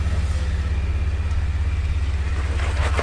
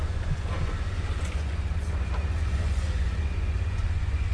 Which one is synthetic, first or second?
second